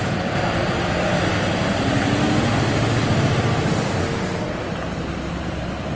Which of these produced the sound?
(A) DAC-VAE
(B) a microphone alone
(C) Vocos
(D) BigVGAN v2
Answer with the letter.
B